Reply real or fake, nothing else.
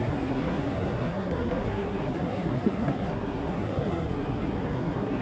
fake